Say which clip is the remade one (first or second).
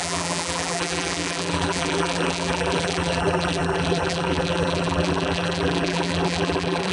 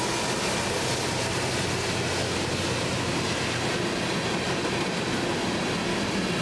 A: first